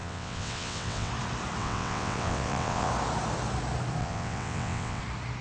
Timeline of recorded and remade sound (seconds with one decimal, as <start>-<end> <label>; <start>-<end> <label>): 0.0-1.1 remade; 1.1-1.6 recorded; 1.6-2.9 remade; 2.9-4.0 recorded; 4.0-5.0 remade; 5.0-5.4 recorded